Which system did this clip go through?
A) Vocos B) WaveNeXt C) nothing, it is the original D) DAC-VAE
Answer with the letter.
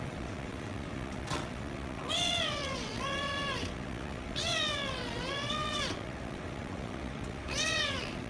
B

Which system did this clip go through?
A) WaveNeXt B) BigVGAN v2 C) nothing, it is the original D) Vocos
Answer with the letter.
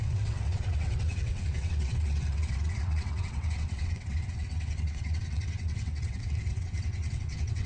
A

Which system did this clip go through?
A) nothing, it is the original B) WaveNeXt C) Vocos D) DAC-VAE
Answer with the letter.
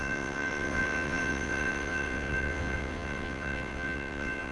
B